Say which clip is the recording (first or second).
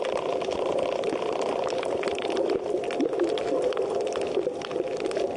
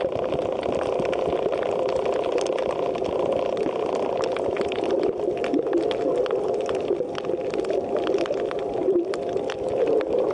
second